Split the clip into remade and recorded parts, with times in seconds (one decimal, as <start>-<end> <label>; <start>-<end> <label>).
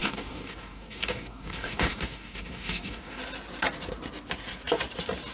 0.0-3.2 remade; 3.2-5.3 recorded